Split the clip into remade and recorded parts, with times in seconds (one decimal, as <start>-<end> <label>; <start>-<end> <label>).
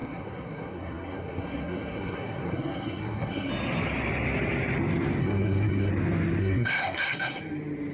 0.0-3.5 remade; 3.5-5.2 recorded; 5.2-5.9 remade; 5.9-6.4 recorded; 6.4-7.4 remade; 7.4-7.9 recorded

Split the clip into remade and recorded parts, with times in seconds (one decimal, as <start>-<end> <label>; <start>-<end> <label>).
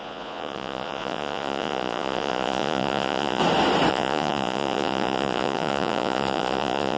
0.0-3.4 remade; 3.4-3.9 recorded; 3.9-7.0 remade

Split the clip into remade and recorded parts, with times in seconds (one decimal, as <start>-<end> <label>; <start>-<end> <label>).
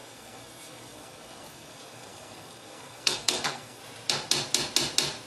0.0-3.8 remade; 3.8-5.3 recorded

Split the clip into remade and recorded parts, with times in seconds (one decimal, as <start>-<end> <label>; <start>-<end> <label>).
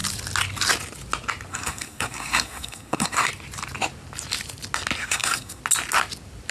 0.0-1.5 recorded; 1.5-3.3 remade; 3.3-5.0 recorded; 5.0-5.6 remade; 5.6-6.5 recorded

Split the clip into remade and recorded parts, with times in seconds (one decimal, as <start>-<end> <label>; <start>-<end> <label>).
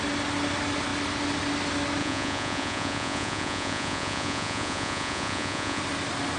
0.0-2.0 recorded; 2.0-5.8 remade; 5.8-6.4 recorded